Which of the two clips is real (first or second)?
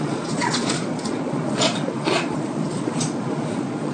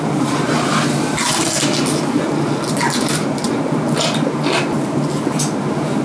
second